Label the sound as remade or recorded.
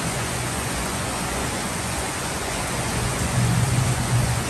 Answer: remade